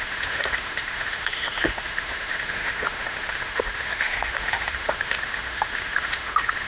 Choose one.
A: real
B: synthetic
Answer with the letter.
B